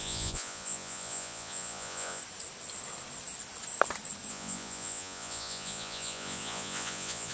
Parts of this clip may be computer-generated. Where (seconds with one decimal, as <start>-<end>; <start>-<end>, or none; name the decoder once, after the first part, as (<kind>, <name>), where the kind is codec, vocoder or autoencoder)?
0.0-2.2 (vocoder, Vocos); 4.3-7.3